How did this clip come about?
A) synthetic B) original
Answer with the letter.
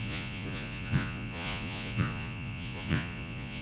A